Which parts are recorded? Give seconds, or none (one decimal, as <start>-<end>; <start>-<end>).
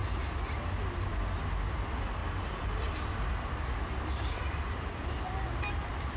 0.0-2.2